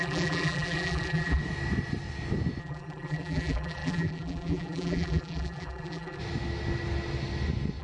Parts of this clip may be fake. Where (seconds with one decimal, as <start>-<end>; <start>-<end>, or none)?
0.0-1.4; 2.6-6.2

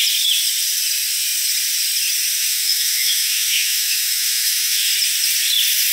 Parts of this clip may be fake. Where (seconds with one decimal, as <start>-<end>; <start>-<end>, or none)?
2.4-4.9